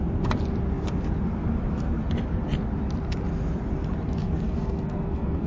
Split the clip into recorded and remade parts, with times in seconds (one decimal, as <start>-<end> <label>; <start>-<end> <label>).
0.0-4.2 recorded; 4.2-5.5 remade